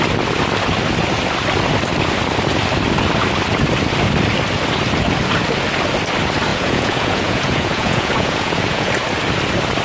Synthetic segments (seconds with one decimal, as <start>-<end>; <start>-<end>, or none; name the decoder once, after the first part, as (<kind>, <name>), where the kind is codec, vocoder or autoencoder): 6.5-8.9 (vocoder, Vocos)